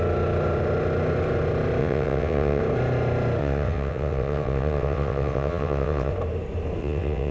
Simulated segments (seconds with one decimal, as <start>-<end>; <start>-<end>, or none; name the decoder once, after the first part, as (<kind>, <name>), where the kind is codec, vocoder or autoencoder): 1.8-2.6 (vocoder, WaveNeXt); 3.4-6.1; 6.8-7.3